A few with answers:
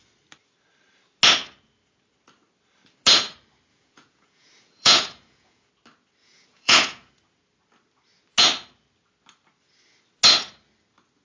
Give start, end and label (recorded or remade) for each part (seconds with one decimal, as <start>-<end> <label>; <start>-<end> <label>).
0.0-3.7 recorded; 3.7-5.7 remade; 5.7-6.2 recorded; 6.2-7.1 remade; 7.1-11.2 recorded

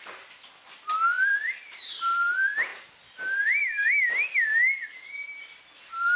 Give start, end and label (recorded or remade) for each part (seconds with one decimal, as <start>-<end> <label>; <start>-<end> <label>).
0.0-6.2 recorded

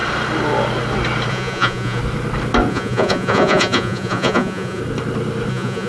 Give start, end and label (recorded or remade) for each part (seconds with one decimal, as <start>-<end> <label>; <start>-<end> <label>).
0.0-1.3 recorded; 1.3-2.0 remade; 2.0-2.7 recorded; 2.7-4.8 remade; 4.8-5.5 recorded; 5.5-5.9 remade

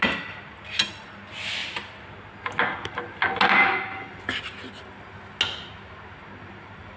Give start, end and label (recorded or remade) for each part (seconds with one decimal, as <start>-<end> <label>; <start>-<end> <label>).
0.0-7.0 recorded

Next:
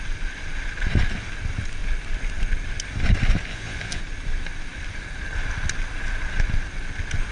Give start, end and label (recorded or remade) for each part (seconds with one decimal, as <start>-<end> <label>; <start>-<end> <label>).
0.0-3.5 recorded; 3.5-4.0 remade; 4.0-7.3 recorded